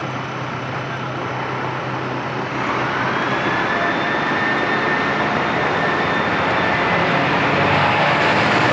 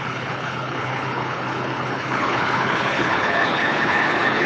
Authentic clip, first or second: first